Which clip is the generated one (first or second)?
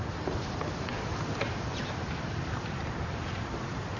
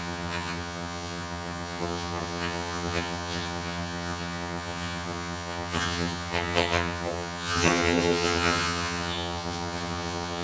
second